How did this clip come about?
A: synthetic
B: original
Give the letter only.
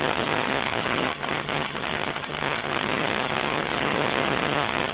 A